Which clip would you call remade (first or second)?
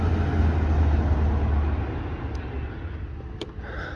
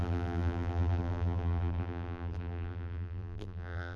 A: second